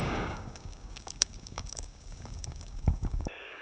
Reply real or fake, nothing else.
fake